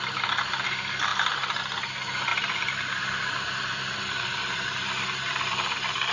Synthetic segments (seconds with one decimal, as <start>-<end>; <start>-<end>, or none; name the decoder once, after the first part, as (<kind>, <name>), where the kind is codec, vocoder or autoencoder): 1.1-1.6 (vocoder, BigVGAN v2); 2.3-6.1